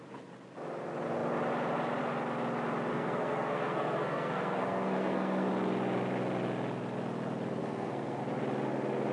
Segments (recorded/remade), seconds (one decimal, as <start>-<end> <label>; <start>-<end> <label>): 0.0-2.9 recorded; 2.9-5.5 remade; 5.5-7.6 recorded; 7.6-8.2 remade; 8.2-9.1 recorded